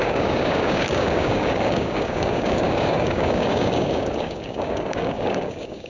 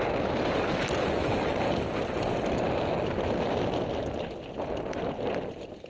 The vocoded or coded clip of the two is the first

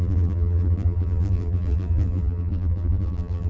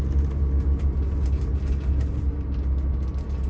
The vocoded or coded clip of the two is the first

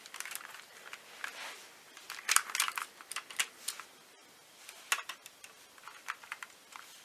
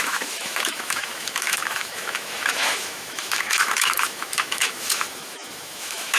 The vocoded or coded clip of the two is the second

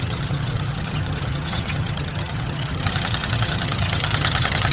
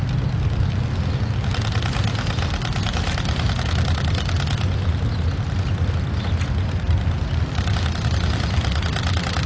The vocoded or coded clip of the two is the first